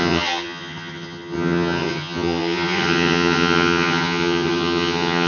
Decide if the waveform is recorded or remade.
remade